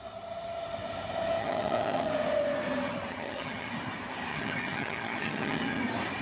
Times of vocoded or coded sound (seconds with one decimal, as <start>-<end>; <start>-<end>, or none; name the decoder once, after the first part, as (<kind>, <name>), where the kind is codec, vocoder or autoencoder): 1.4-2.1 (vocoder, HiFi-GAN); 3.1-3.7; 4.3-5.8